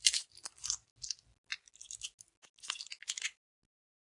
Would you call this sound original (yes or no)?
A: yes